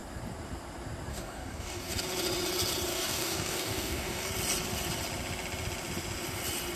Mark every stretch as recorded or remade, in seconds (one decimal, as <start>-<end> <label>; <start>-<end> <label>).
0.0-1.1 recorded; 1.1-2.0 remade; 2.0-2.9 recorded; 2.9-4.3 remade; 4.3-6.8 recorded